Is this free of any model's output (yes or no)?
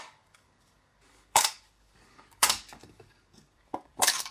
no